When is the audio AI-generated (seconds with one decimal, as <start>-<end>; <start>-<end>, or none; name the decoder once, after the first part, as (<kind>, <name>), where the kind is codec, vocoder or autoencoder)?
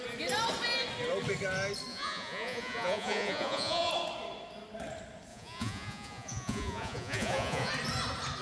1.9-3.9 (vocoder, Vocos); 5.3-7.7